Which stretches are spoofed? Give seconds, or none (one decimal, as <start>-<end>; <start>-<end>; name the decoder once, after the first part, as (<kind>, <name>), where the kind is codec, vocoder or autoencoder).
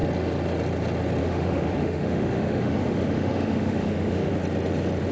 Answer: 1.2-4.3 (autoencoder, DAC-VAE)